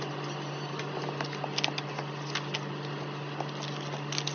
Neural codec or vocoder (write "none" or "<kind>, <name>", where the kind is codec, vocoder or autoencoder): none